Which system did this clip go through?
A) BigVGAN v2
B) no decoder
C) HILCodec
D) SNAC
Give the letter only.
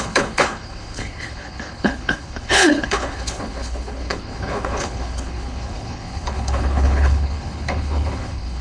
C